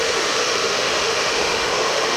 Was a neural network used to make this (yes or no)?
yes